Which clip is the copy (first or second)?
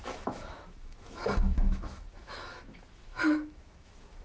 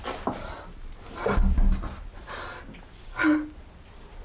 first